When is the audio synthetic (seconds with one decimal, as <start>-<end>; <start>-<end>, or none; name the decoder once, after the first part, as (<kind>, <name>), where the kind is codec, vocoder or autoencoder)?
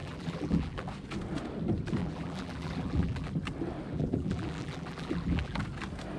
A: 0.0-0.9 (vocoder, BigVGAN v2); 2.0-3.3; 3.9-5.6